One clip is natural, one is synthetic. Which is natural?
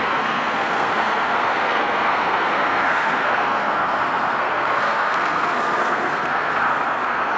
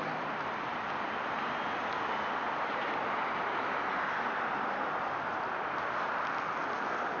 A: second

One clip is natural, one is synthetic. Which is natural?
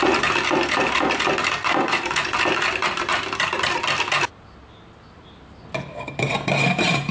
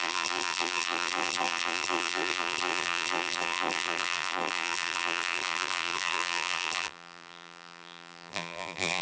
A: first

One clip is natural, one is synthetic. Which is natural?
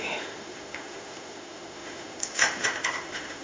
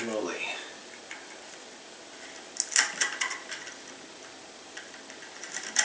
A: second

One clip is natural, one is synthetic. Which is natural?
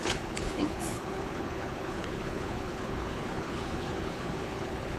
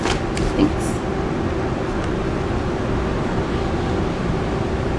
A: second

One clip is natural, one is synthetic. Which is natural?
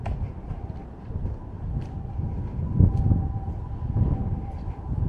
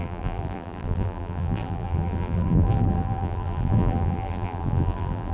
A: first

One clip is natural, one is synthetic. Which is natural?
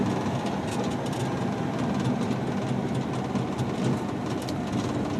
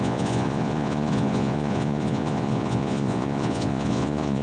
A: first